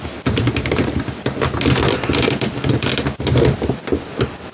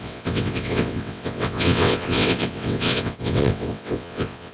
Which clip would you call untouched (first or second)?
first